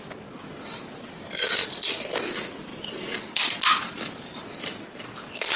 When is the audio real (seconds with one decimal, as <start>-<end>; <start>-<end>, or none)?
0.0-5.6